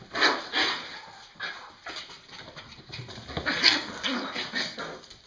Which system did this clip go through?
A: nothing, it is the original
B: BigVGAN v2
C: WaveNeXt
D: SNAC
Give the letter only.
A